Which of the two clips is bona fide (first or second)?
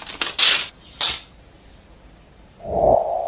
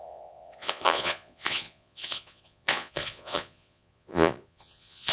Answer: first